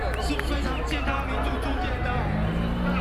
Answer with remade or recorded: recorded